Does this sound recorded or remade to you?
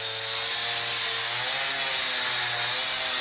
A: recorded